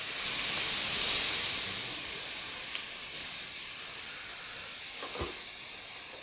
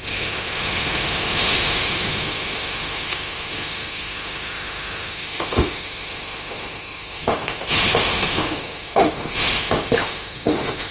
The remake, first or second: second